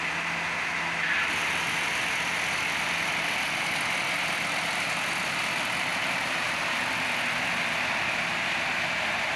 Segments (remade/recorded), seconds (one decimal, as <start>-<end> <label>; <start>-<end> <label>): 0.0-5.9 recorded; 5.9-6.8 remade; 6.8-9.4 recorded